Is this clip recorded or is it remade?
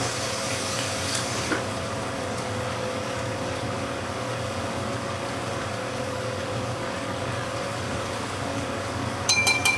remade